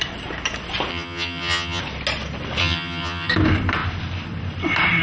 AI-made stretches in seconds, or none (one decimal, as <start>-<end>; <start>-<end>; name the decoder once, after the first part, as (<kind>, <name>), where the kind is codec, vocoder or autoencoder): 0.9-1.8 (vocoder, HiFi-GAN); 2.6-3.3